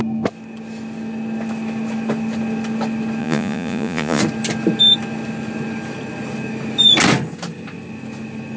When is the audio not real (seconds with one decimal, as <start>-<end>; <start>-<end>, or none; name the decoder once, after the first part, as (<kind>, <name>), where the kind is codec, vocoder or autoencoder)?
3.2-4.2 (vocoder, Vocos)